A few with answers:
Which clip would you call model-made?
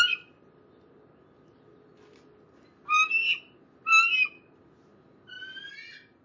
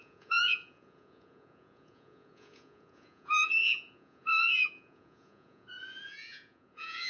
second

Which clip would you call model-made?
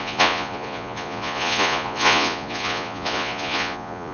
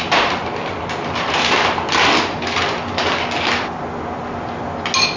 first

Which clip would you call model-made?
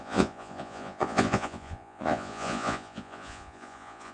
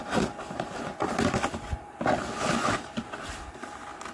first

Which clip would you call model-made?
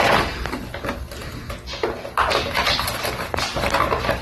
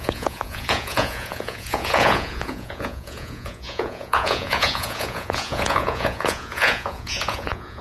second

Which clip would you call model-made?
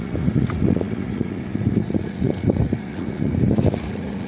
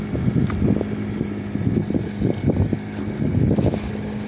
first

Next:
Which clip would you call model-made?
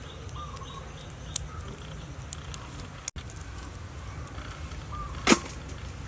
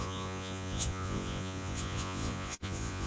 second